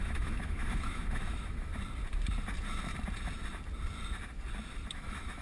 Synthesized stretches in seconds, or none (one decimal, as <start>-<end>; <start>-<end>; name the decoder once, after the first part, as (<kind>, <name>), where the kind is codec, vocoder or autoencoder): 0.0-1.7 (autoencoder, DAC-VAE); 4.9-5.4